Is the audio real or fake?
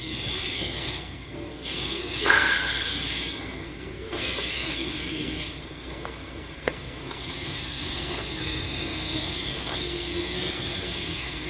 fake